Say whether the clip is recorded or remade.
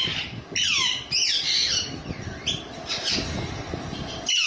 recorded